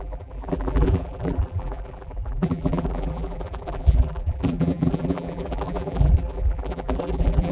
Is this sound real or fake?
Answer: fake